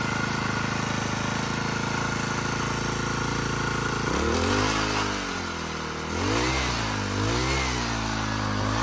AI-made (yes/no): no